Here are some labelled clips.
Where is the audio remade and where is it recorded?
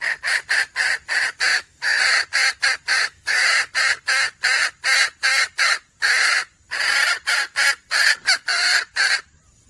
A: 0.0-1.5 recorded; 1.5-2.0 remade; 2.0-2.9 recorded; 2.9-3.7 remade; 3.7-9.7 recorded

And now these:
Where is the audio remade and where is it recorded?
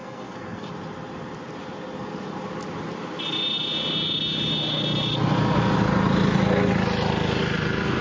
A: 0.0-0.7 remade; 0.7-8.0 recorded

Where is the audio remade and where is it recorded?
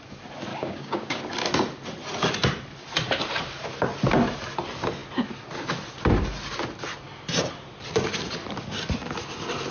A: 0.0-0.5 recorded; 0.5-1.2 remade; 1.2-9.7 recorded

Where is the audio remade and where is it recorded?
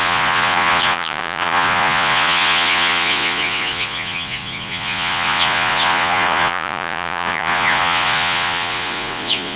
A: 0.0-9.6 remade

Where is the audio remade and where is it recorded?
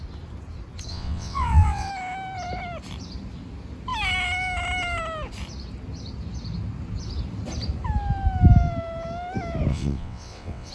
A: 0.0-0.9 recorded; 0.9-1.9 remade; 1.9-9.7 recorded; 9.7-10.7 remade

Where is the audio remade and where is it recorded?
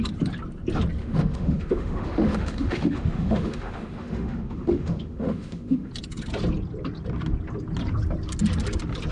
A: 0.0-1.0 recorded; 1.0-5.9 remade; 5.9-9.1 recorded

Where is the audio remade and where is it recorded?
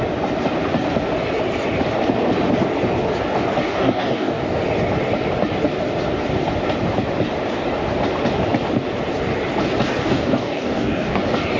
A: 0.0-3.7 recorded; 3.7-4.6 remade; 4.6-10.0 recorded; 10.0-11.2 remade; 11.2-11.6 recorded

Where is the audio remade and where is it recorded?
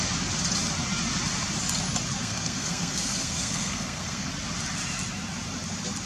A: 0.0-2.2 recorded; 2.2-4.3 remade; 4.3-6.1 recorded